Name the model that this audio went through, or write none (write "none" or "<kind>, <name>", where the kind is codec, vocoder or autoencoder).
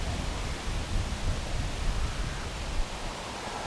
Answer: none